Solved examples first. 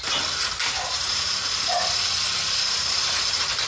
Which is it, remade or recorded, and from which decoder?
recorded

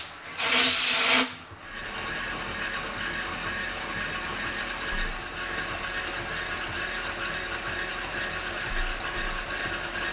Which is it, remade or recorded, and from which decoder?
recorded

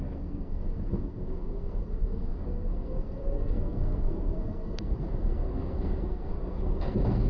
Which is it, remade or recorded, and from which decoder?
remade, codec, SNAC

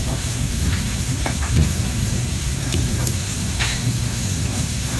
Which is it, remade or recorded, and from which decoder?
remade, codec, SNAC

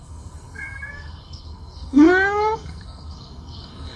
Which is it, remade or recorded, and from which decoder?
remade, codec, SNAC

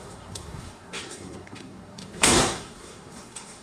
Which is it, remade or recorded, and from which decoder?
remade, codec, SNAC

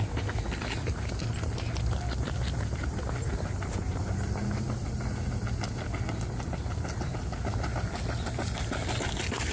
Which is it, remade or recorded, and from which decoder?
recorded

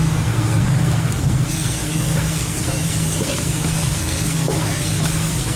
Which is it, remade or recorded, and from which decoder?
remade, codec, SNAC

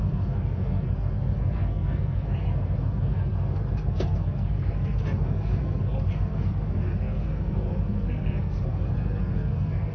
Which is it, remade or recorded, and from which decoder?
remade, codec, SNAC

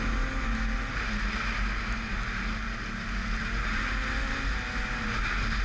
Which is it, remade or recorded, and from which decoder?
recorded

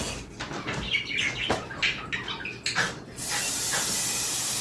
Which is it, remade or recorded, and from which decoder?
recorded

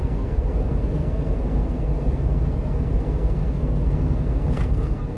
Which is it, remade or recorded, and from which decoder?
remade, codec, SNAC